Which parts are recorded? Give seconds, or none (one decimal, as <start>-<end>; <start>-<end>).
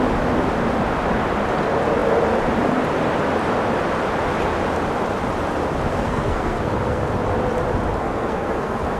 0.0-5.9; 7.1-8.0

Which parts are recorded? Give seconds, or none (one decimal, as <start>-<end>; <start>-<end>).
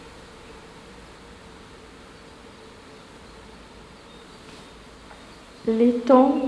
0.0-6.5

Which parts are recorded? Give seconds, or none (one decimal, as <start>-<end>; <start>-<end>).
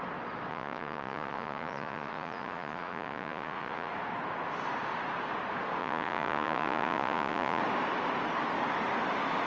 0.0-0.5; 3.9-5.8; 7.6-9.5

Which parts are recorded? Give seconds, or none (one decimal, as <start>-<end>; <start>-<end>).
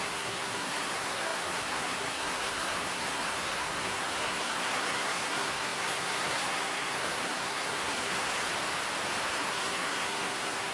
8.4-9.2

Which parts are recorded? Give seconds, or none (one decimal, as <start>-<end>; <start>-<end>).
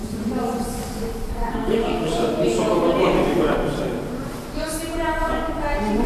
0.0-1.3; 2.1-6.1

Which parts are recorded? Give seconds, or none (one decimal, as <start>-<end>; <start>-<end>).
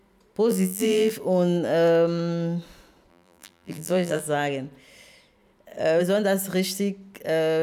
0.0-0.5; 1.1-3.1; 4.2-7.6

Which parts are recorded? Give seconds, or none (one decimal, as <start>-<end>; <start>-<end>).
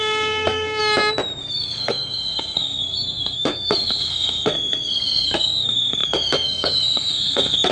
0.8-1.4